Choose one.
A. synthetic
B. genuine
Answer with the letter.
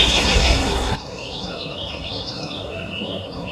A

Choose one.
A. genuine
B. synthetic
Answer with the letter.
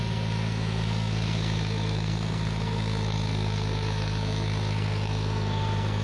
B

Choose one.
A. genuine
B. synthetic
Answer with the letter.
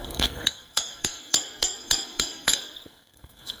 B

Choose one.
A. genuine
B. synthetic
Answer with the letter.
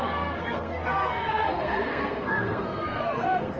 B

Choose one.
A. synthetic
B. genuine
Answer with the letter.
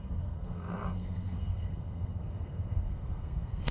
A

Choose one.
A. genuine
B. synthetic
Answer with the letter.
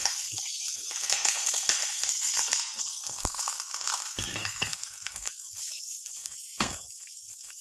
B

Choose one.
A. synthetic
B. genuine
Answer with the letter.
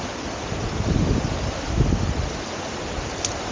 B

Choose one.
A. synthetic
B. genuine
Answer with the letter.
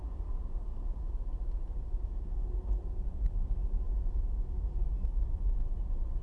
B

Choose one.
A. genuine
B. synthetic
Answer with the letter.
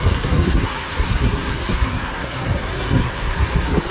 B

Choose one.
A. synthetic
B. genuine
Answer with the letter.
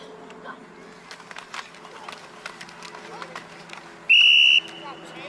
B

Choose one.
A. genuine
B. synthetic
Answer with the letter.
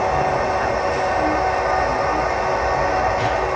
A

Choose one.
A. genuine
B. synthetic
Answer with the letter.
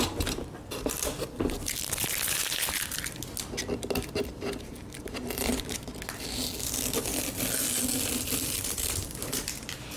A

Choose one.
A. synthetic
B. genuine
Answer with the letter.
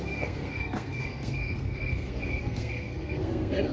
A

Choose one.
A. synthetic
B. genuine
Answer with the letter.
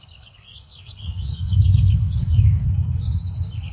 A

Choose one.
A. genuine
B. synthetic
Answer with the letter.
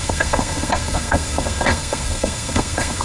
B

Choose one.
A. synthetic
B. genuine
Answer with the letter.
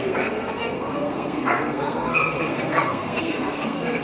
A